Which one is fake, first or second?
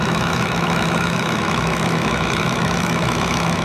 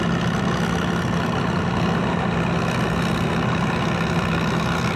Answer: first